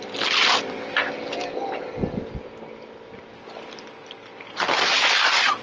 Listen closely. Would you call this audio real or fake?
real